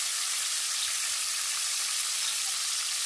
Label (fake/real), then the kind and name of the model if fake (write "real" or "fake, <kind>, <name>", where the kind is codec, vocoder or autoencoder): real